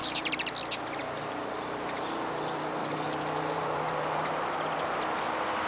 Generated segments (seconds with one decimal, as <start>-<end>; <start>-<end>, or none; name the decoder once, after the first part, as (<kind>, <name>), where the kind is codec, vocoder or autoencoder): 0.0-0.5 (vocoder, BigVGAN v2); 1.0-2.1; 2.8-4.5